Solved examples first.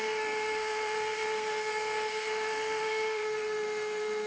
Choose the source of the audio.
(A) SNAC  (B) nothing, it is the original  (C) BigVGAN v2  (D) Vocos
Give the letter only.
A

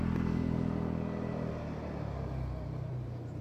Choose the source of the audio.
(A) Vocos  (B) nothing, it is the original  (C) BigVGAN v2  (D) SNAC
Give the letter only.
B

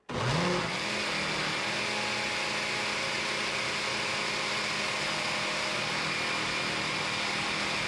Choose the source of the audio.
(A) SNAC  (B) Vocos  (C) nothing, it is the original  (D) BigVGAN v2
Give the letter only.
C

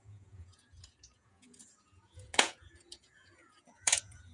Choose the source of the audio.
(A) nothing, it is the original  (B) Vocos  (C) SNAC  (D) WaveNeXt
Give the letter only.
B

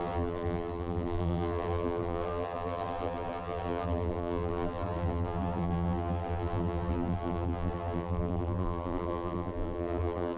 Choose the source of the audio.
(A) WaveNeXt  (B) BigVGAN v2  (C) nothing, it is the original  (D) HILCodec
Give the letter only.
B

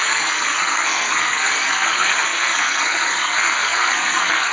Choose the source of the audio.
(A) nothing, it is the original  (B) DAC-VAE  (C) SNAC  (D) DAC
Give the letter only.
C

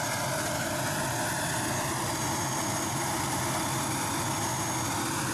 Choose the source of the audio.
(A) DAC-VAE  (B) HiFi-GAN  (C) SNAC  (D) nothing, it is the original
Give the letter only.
D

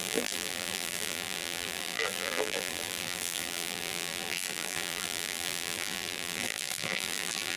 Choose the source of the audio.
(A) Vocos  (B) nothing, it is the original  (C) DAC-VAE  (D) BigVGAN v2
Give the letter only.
D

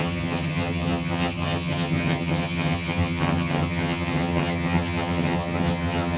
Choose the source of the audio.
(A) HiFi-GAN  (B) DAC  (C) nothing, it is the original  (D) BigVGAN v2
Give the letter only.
A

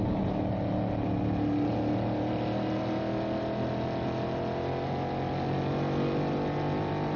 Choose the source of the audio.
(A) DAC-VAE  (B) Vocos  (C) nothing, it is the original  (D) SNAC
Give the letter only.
C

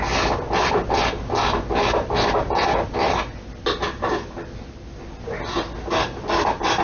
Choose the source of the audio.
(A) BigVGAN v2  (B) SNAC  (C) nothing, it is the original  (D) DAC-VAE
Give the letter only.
C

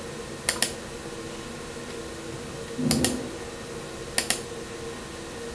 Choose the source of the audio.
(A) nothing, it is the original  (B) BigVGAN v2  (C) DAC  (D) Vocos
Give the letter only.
A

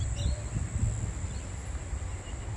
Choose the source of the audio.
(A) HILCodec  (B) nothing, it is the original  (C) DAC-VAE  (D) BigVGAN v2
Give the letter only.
B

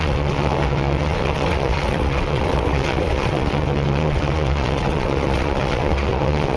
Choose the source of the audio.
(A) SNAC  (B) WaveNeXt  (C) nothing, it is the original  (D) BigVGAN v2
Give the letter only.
B